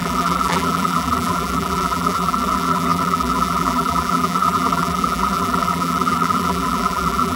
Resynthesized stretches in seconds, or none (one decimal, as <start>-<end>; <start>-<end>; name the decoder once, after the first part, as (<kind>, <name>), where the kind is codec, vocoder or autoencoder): 0.0-7.4 (vocoder, BigVGAN v2)